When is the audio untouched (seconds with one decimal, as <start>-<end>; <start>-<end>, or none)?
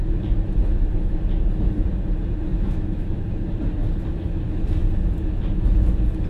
0.0-2.5; 3.2-6.3